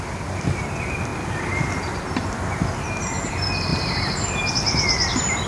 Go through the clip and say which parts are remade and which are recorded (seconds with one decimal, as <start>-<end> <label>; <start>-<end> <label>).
0.0-5.5 recorded